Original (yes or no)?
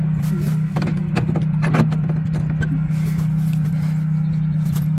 yes